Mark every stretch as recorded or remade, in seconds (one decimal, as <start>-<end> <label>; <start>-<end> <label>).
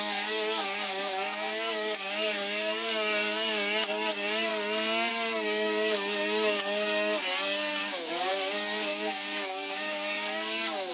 0.0-4.5 remade; 4.5-5.1 recorded; 5.1-10.9 remade